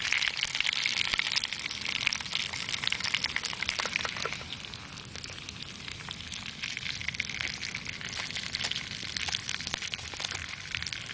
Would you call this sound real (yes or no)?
yes